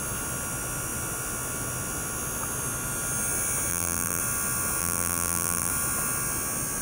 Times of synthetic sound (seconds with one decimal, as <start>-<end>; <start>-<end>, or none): 3.7-4.2; 4.8-5.7